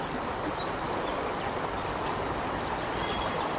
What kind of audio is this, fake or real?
real